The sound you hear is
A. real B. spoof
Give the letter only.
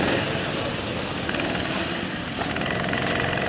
A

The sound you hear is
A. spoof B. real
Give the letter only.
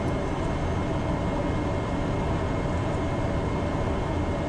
B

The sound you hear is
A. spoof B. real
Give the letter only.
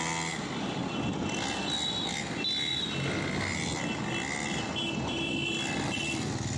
B